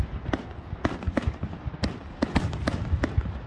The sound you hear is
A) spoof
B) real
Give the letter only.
B